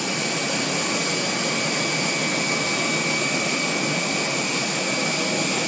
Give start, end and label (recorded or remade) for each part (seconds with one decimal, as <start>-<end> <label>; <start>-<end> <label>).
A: 0.0-5.7 recorded